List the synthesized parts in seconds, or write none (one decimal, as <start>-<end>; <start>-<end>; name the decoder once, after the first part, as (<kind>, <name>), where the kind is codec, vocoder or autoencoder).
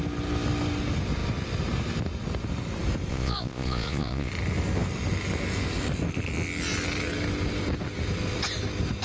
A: 3.1-4.3 (vocoder, Vocos)